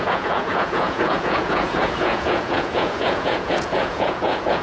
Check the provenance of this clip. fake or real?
fake